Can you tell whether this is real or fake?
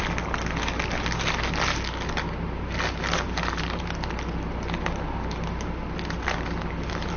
real